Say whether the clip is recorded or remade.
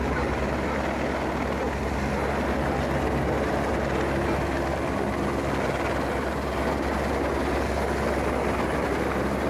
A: recorded